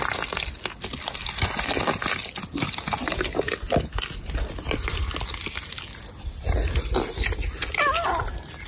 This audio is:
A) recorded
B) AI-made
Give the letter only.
A